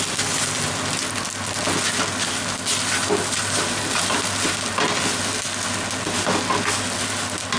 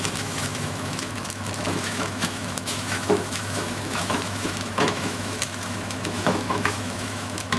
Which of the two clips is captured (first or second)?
first